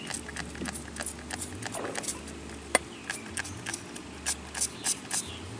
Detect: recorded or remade recorded